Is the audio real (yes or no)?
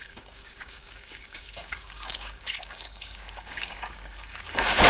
no